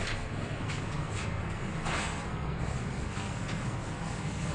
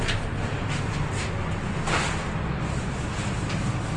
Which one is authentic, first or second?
second